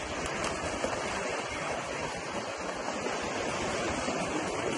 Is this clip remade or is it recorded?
recorded